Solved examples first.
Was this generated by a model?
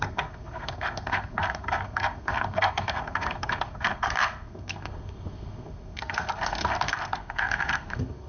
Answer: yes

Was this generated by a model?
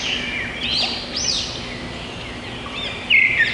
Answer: no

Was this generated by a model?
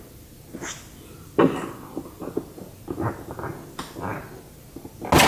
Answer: no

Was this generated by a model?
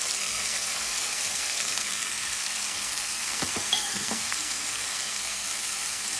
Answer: yes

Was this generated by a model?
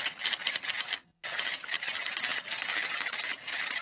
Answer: no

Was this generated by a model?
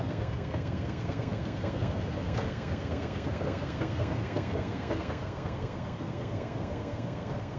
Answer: yes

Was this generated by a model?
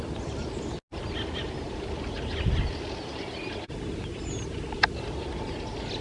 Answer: no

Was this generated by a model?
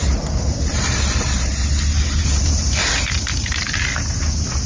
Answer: no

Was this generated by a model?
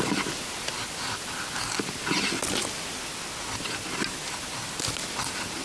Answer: no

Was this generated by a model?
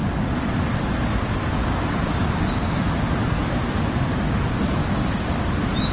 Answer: no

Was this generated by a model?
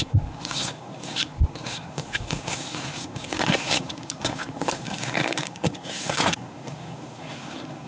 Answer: yes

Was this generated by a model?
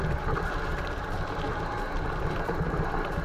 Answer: no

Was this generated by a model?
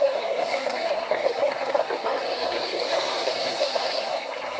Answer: yes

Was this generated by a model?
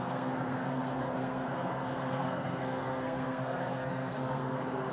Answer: yes